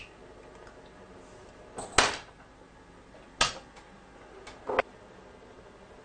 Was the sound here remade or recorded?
recorded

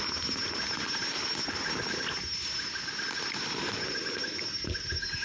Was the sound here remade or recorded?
recorded